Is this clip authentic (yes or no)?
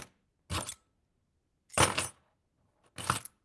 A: yes